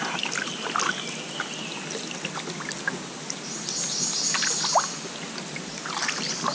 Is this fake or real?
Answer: real